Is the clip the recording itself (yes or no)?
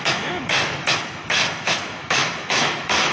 no